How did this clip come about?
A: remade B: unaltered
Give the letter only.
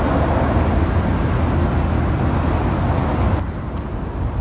B